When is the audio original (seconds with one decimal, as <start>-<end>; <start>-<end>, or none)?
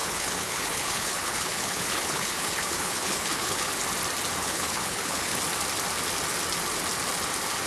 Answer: 3.7-4.4; 5.4-7.7